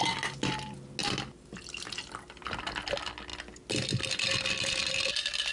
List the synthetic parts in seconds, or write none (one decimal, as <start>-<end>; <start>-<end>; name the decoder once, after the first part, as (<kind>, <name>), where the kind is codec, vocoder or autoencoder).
none